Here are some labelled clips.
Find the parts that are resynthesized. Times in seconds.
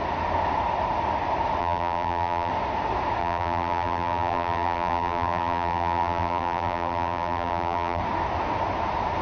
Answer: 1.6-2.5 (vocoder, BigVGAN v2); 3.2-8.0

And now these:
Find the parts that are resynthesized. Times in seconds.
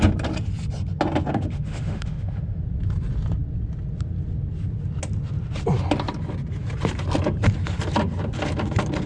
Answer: 1.3-2.6 (autoencoder, DAC-VAE)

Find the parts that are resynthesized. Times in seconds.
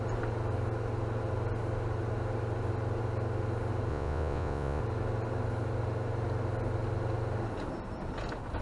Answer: 3.9-4.8 (vocoder, Vocos)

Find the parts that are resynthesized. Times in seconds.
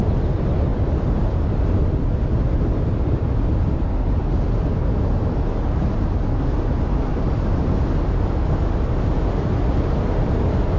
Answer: none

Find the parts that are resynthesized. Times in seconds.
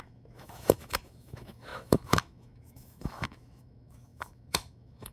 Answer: 0.0-5.1 (autoencoder, DAC-VAE)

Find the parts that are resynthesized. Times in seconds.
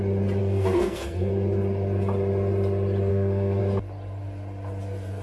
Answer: 0.4-1.3 (codec, SNAC); 3.1-3.6